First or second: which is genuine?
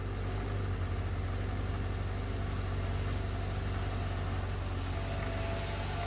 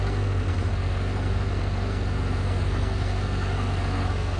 first